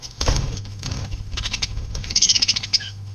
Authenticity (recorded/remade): remade